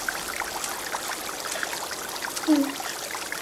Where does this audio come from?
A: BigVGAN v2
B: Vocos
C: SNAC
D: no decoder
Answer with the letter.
D